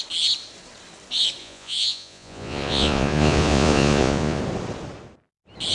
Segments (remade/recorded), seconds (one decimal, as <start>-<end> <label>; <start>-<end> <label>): 0.0-1.4 recorded; 1.4-4.4 remade; 4.4-5.7 recorded